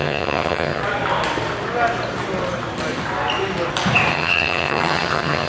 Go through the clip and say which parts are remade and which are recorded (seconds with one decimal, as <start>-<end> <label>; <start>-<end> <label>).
0.0-0.8 remade; 0.8-4.1 recorded; 4.1-5.5 remade